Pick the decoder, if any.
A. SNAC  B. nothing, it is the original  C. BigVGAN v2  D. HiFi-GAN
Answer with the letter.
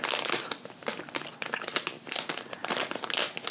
B